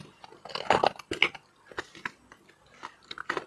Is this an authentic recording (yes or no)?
yes